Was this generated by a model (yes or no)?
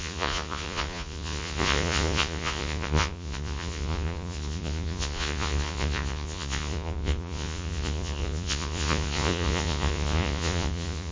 yes